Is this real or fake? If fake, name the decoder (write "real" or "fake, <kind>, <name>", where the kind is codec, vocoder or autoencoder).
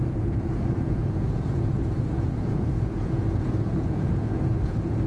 fake, vocoder, Vocos